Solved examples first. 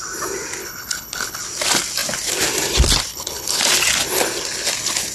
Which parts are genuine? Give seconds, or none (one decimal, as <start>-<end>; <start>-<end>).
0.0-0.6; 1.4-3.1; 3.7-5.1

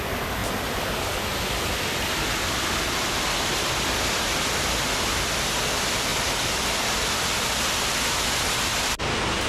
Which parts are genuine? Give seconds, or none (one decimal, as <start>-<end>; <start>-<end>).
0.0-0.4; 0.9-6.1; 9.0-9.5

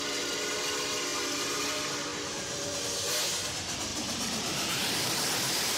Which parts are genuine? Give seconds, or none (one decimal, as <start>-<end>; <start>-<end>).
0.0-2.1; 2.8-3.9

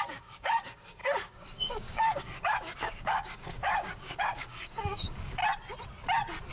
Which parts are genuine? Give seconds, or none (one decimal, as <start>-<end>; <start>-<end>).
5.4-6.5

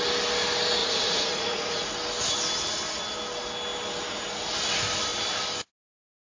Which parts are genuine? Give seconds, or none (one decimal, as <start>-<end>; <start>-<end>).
0.0-0.8; 1.9-6.2